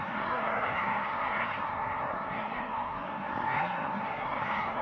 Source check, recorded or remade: remade